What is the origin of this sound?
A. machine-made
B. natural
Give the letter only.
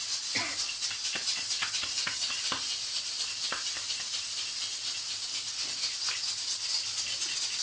B